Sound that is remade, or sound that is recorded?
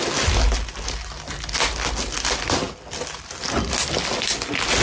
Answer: recorded